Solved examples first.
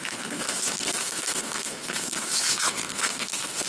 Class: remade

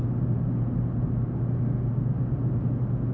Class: recorded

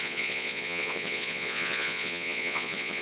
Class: remade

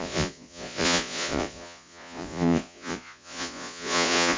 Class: remade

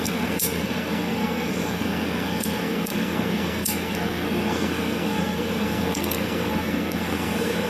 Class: remade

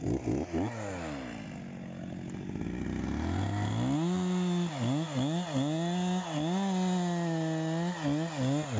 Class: recorded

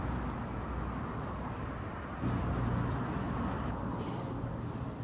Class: recorded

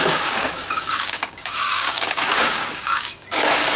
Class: remade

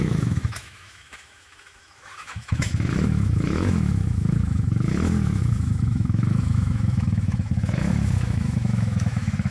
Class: remade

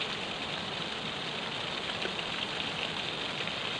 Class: recorded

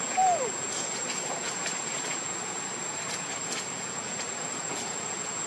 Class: remade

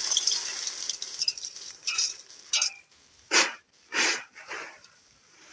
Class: remade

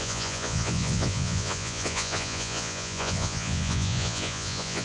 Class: remade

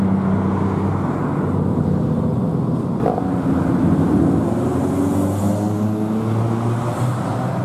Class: recorded